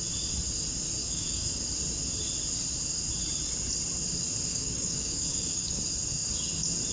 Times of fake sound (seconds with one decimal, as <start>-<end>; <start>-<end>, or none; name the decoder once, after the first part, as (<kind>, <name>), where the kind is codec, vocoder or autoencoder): 1.0-1.6 (codec, DAC); 4.5-5.8